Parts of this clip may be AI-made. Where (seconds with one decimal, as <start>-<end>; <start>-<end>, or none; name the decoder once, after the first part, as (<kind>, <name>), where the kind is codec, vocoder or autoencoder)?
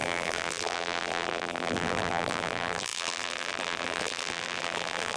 0.0-5.2 (vocoder, BigVGAN v2)